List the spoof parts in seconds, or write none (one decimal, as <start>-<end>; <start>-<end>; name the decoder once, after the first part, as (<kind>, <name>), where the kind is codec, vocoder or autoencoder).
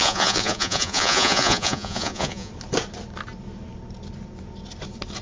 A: 0.0-2.5 (vocoder, Vocos)